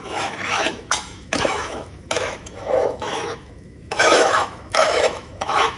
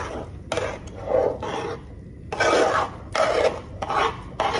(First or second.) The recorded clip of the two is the second